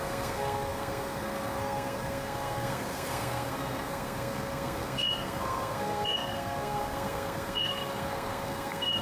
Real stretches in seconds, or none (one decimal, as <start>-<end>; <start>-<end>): none